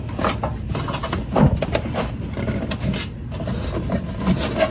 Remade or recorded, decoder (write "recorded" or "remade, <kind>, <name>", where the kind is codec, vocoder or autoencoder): recorded